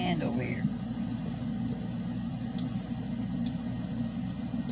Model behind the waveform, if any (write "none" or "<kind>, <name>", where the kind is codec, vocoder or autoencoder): none